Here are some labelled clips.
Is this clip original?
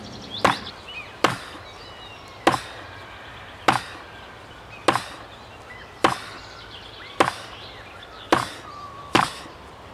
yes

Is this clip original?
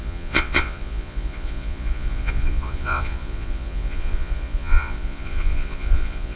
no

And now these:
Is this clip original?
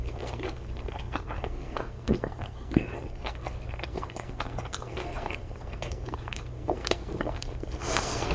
no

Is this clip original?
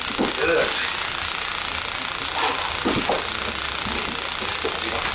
yes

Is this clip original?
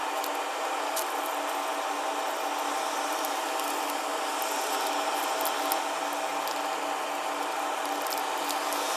yes